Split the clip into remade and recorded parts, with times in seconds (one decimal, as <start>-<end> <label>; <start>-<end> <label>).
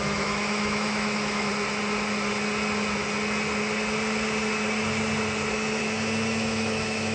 0.0-1.5 remade; 1.5-5.8 recorded; 5.8-7.1 remade